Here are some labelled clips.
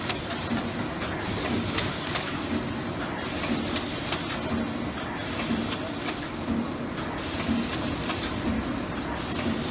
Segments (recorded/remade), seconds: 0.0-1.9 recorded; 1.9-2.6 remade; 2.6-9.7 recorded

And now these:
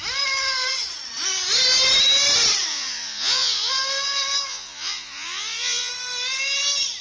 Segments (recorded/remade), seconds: 0.0-2.7 recorded; 2.7-3.7 remade; 3.7-4.5 recorded; 4.5-5.9 remade; 5.9-7.0 recorded